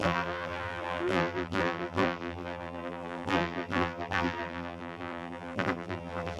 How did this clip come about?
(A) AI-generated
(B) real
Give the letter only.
A